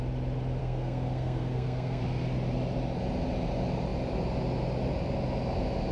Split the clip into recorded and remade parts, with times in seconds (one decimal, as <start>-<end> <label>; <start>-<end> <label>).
0.0-0.6 recorded; 0.6-2.0 remade; 2.0-5.9 recorded